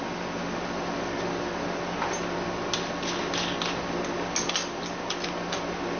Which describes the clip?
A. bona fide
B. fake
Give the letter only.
A